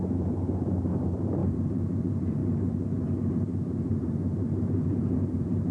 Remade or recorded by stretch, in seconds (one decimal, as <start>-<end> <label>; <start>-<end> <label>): 0.0-2.4 remade; 2.4-3.3 recorded; 3.3-5.7 remade